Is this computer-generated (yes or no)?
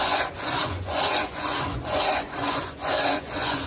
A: yes